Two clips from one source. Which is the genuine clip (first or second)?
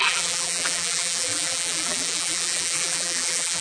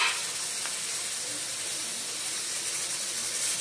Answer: second